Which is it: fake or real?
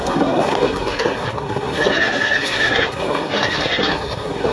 fake